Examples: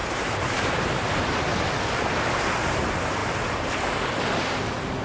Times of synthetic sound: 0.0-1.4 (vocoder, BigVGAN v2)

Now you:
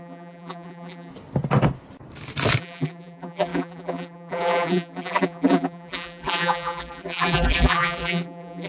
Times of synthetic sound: 0.0-1.1 (vocoder, BigVGAN v2); 2.6-8.7